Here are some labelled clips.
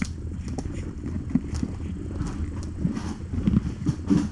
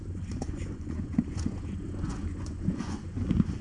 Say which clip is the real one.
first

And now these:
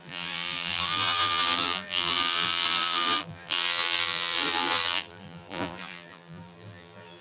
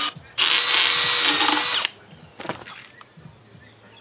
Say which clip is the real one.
second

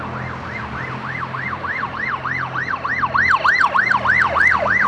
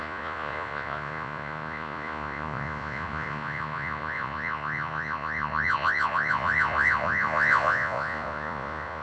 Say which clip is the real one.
first